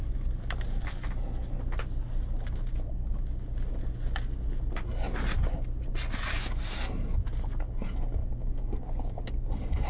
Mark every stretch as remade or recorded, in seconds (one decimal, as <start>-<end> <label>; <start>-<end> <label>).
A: 0.0-8.2 recorded; 8.2-9.5 remade; 9.5-9.9 recorded